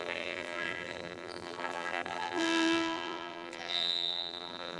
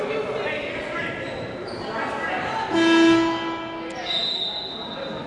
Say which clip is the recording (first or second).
second